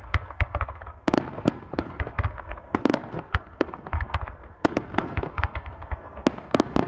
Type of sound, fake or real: fake